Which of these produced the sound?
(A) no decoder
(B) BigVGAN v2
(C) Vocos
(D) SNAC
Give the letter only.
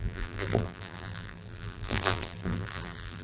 B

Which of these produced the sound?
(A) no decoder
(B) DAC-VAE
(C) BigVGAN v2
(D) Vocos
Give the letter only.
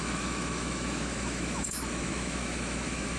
B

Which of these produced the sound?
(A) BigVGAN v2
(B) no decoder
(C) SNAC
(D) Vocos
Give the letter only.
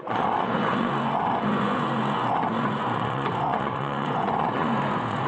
D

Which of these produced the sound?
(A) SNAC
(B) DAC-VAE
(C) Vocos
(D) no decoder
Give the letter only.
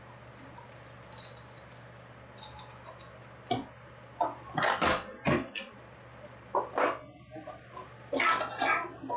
D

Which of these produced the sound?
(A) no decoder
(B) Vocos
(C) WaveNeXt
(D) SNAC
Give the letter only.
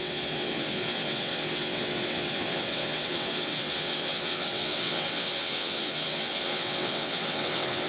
C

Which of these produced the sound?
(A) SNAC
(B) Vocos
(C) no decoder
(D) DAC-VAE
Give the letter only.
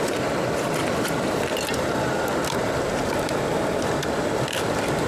C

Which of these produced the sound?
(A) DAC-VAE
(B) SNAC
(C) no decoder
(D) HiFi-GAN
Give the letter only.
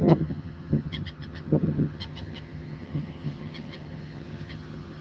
D